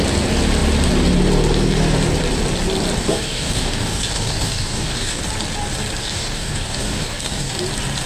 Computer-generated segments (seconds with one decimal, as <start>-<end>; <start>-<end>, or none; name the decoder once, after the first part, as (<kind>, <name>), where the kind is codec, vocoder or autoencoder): 3.0-5.2 (codec, DAC); 6.0-7.5